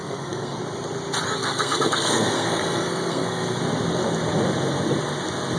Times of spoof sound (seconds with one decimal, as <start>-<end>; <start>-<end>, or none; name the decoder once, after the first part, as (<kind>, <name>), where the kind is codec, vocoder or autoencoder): 0.0-0.6 (codec, SNAC); 1.4-3.6